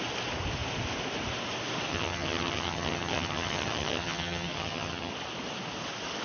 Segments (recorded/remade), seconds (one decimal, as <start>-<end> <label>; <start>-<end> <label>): 0.0-1.9 recorded; 1.9-5.1 remade; 5.1-6.2 recorded